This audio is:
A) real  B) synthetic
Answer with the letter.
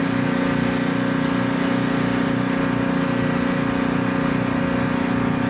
A